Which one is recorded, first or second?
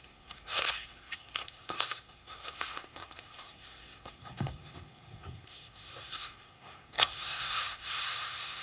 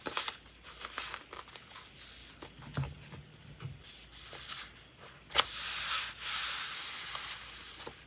second